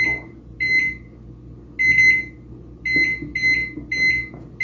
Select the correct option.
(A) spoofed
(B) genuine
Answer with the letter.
B